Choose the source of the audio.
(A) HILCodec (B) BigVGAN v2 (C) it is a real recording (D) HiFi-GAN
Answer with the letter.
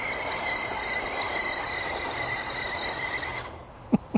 C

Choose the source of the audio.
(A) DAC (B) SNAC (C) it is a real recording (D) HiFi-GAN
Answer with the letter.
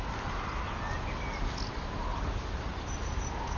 C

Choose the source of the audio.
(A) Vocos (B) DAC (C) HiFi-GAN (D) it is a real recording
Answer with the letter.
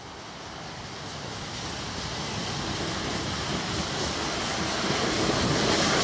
D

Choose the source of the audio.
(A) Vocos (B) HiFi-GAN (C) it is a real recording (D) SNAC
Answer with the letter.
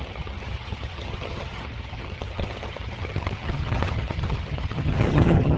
B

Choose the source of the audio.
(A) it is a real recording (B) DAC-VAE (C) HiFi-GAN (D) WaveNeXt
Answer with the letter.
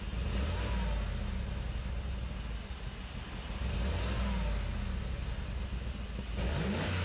A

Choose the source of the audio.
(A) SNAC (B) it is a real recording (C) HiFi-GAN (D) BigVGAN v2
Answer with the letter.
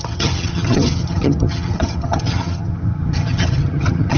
C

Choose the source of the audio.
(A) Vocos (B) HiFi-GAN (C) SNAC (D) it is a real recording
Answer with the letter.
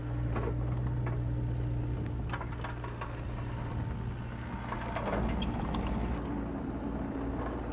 D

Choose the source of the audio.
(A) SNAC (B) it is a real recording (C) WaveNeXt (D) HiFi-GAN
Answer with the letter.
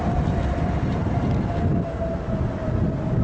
B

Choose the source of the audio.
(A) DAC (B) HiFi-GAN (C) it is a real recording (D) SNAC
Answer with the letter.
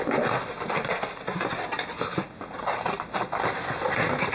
C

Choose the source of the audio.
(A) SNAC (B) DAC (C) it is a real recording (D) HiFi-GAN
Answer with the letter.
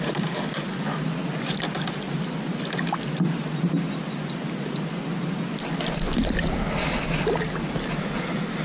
C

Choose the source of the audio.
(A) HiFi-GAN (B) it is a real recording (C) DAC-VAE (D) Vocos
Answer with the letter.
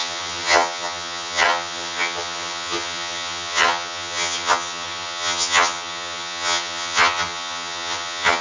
A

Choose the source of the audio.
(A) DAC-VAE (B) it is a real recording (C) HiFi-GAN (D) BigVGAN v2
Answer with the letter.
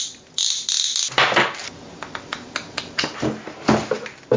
B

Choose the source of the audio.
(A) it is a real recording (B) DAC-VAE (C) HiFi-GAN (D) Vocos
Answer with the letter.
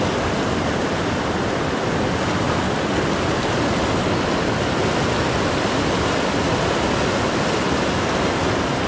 A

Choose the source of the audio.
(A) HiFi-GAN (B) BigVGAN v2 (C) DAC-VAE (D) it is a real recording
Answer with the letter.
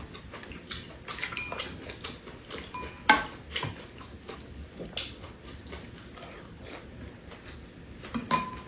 D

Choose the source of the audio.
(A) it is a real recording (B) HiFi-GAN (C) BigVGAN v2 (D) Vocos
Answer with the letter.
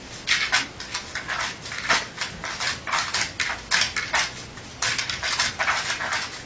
A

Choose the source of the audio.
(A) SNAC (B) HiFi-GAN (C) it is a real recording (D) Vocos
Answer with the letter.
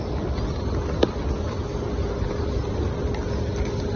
C